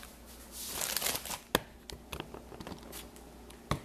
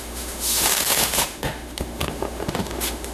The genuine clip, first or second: first